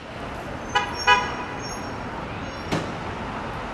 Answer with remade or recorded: recorded